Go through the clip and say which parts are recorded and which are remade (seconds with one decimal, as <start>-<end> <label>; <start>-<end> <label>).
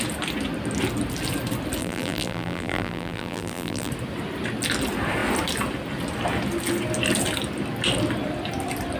0.0-1.8 recorded; 1.8-3.9 remade; 3.9-9.0 recorded